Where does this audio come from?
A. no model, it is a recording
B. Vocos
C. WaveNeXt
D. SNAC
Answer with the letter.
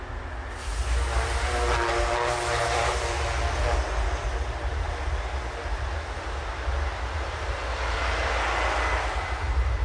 A